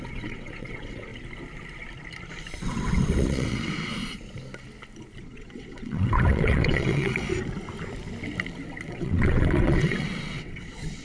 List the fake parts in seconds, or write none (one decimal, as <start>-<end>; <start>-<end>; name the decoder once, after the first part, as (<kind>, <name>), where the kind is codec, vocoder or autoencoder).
0.0-1.1 (vocoder, WaveNeXt); 2.6-3.9; 5.2-7.3; 8.9-11.0